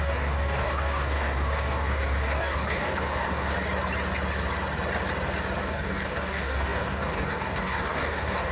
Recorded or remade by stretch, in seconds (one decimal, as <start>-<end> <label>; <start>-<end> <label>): 0.0-3.5 remade; 3.5-5.6 recorded; 5.6-8.5 remade